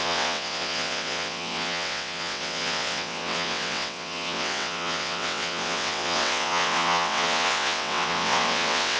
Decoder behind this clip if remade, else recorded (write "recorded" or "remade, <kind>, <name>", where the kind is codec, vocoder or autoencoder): remade, vocoder, WaveNeXt